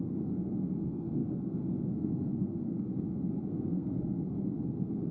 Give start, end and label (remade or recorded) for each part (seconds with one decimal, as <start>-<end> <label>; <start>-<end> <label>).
0.0-5.1 remade